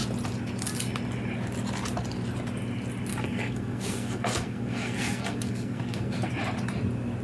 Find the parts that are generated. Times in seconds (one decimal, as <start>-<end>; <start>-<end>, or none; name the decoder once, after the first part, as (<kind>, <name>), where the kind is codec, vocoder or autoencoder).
3.1-6.3 (codec, SNAC)